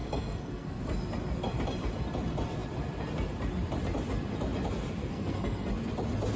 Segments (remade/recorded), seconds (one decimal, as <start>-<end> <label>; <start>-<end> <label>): 0.0-0.8 remade; 0.8-5.0 recorded; 5.0-5.7 remade; 5.7-6.4 recorded